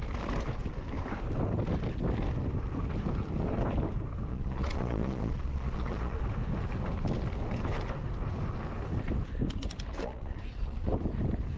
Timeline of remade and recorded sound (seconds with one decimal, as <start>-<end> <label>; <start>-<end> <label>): 0.0-4.3 recorded; 4.3-6.2 remade; 6.2-9.9 recorded; 9.9-10.9 remade; 10.9-11.6 recorded